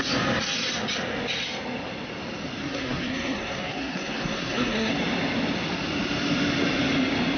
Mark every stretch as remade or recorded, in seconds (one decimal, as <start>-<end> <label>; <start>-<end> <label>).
0.0-2.6 recorded; 2.6-4.9 remade; 4.9-7.4 recorded